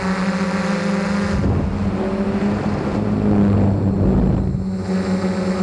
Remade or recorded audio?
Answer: recorded